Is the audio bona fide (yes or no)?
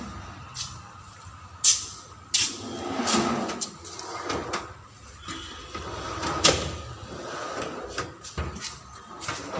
yes